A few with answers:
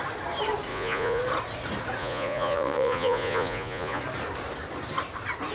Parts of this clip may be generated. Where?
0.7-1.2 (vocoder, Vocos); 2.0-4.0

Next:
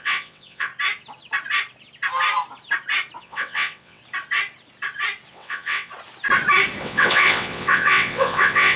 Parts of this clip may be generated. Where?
0.0-0.7 (vocoder, WaveNeXt); 3.2-4.0; 5.3-5.9; 6.8-8.8

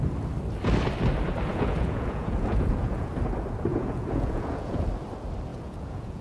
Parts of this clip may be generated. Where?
1.5-3.1 (vocoder, Vocos); 3.7-4.9; 5.5-6.2